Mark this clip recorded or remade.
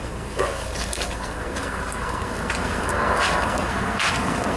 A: remade